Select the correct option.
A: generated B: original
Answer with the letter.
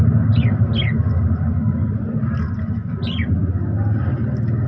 B